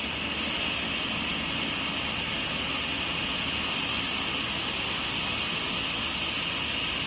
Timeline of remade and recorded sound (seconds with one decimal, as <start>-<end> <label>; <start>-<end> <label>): 0.0-7.1 recorded